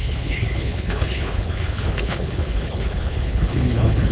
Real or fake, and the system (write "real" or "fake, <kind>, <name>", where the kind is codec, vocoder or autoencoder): fake, codec, HILCodec